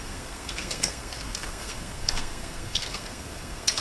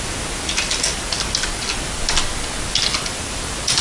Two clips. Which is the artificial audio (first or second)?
first